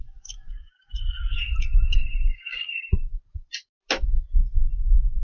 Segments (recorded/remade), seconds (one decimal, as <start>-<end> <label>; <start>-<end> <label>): 0.0-0.9 remade; 0.9-1.3 recorded; 1.3-2.9 remade; 2.9-5.2 recorded